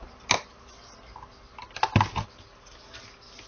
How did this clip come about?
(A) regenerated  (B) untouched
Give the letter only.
B